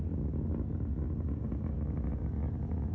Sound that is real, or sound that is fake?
real